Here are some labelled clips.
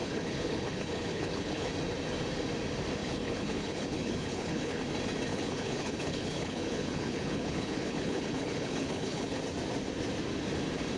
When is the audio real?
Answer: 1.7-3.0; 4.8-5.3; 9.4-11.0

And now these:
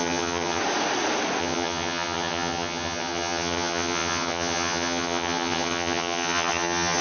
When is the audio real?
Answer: 0.6-1.4

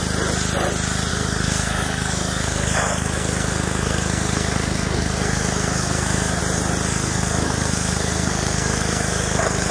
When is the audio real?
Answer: 0.0-1.1; 6.4-6.9

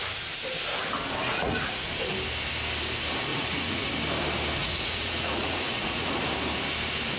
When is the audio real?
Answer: 0.0-1.3; 1.9-3.3; 3.9-4.6; 6.1-7.2

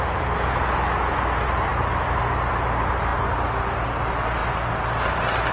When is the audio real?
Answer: 0.0-5.5

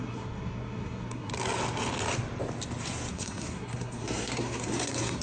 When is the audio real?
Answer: 1.3-3.1

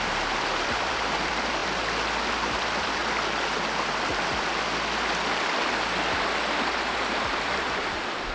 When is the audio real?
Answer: 3.0-6.6

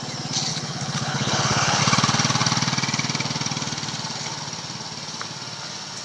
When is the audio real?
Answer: 0.0-0.5; 1.8-6.0